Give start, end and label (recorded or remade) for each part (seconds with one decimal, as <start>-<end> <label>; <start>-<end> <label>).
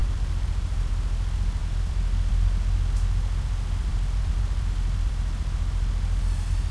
0.0-0.9 remade; 0.9-1.6 recorded; 1.6-2.3 remade; 2.3-3.9 recorded; 3.9-5.1 remade; 5.1-6.7 recorded